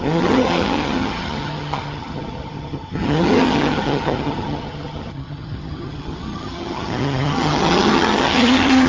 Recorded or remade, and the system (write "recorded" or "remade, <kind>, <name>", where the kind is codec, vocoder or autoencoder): remade, vocoder, HiFi-GAN